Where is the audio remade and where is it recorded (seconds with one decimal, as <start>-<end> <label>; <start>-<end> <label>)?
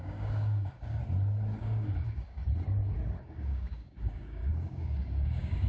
0.0-1.0 remade; 1.0-1.6 recorded; 1.6-2.4 remade; 2.4-3.2 recorded; 3.2-5.7 remade